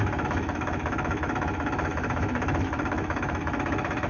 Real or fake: fake